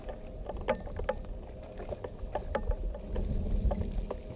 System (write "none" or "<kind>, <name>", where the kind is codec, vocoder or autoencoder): none